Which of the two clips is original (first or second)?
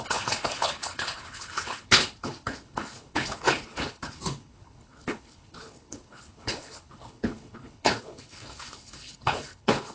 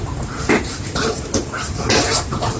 second